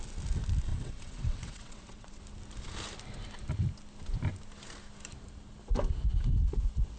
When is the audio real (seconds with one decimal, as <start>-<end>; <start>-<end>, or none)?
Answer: 0.0-0.7; 2.2-7.0